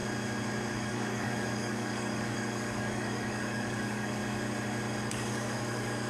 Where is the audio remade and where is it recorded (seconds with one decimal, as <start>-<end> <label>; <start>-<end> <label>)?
0.0-0.7 recorded; 0.7-4.2 remade; 4.2-5.1 recorded; 5.1-6.1 remade